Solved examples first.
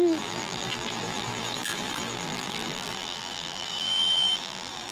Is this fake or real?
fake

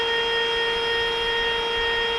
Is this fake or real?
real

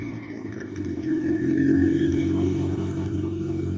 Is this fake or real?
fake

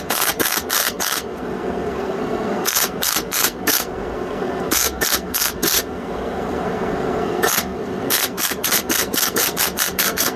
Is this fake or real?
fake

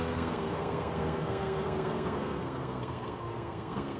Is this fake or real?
fake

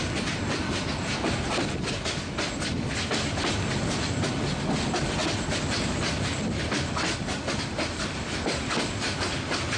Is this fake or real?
real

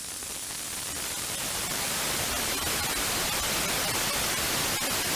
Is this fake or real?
real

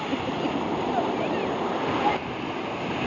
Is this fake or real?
real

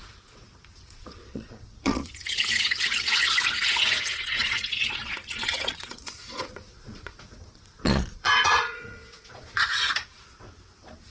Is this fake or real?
fake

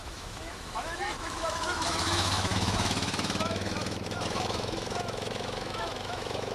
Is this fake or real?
fake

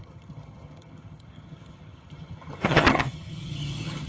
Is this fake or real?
fake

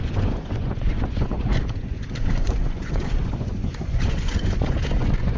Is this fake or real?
fake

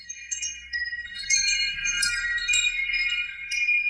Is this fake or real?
fake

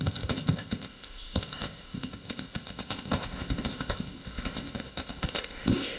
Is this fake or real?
fake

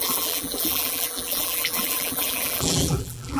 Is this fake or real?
fake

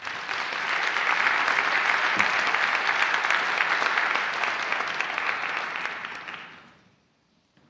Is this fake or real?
real